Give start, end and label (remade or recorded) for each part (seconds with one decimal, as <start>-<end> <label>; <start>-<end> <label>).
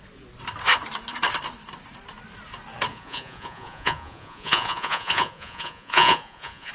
0.0-2.9 recorded; 2.9-6.7 remade